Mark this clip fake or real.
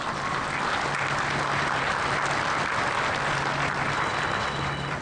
real